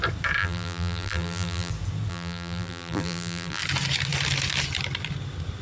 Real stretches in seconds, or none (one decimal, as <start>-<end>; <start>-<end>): 0.0-0.4; 1.7-2.1; 3.6-5.6